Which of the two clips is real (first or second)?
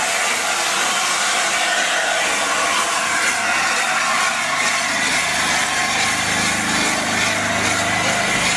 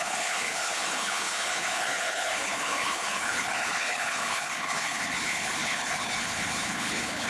first